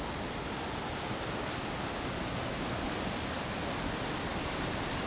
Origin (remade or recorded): recorded